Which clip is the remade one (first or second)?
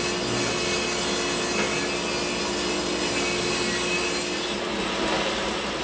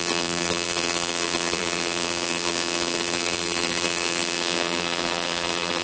second